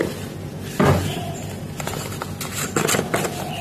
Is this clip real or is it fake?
real